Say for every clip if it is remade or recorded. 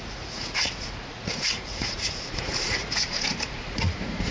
remade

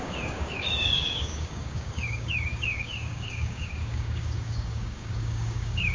remade